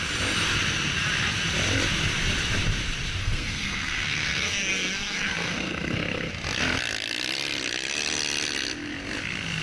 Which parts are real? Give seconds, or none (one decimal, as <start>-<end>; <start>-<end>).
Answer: 0.0-3.2; 6.3-9.6